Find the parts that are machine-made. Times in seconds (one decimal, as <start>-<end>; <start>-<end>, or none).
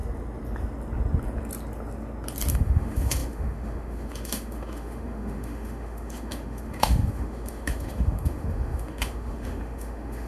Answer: 2.5-10.3